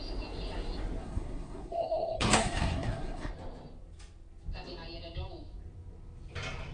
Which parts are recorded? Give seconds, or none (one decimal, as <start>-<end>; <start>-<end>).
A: 0.0-1.0; 3.3-6.7